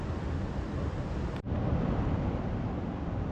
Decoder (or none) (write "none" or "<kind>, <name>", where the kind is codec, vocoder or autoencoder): none